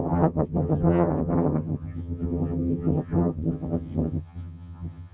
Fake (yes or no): yes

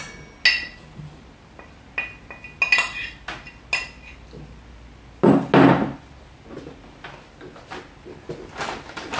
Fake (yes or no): no